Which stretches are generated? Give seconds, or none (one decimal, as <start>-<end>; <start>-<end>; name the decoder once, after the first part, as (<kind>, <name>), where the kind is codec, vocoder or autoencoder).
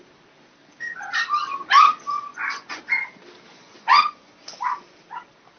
2.3-2.8 (vocoder, Vocos); 3.5-4.4